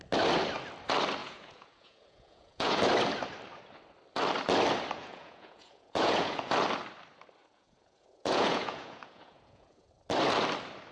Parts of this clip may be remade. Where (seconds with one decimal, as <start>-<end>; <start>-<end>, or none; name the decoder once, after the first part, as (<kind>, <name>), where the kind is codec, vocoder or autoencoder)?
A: 1.2-2.9 (vocoder, Vocos); 5.0-6.5; 7.4-9.9